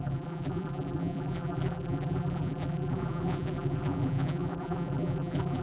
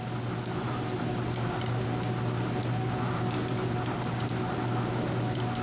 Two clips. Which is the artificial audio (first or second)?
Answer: first